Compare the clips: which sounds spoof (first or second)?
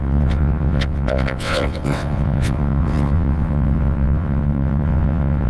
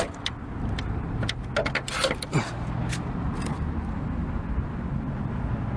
first